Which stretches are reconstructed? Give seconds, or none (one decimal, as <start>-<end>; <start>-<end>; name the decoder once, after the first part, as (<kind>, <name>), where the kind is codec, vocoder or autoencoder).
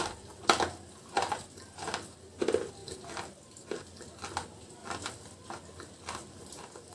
none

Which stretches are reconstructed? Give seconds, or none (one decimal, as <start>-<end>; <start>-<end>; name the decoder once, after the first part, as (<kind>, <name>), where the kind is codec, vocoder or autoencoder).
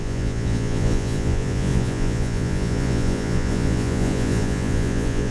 0.0-5.3 (vocoder, Vocos)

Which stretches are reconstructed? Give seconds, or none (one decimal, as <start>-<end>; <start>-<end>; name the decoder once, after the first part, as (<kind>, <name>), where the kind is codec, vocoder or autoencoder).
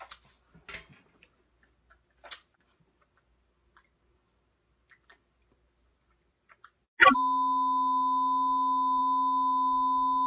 none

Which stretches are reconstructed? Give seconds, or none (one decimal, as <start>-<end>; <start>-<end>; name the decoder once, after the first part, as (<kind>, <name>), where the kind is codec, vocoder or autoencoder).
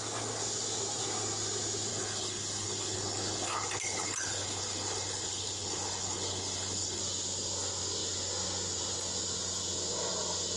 1.9-7.0 (codec, HILCodec)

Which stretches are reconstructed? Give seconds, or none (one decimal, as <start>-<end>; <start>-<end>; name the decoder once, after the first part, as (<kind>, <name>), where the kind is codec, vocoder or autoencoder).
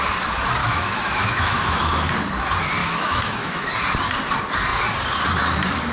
0.6-1.9 (autoencoder, DAC-VAE); 2.8-3.7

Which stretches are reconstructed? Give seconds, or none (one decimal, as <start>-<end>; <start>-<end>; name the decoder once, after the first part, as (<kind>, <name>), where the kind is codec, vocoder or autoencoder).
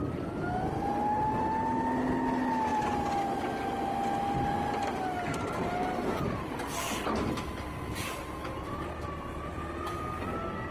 none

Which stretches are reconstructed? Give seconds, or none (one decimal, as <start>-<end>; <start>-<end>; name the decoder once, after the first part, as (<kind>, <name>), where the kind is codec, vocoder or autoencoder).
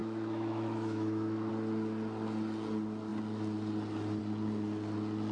0.0-1.5 (autoencoder, DAC-VAE)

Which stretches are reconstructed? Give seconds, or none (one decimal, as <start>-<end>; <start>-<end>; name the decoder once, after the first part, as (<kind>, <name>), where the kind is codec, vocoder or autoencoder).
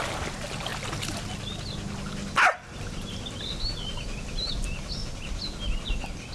none